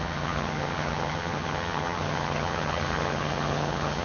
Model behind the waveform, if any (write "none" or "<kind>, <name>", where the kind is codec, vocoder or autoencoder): vocoder, HiFi-GAN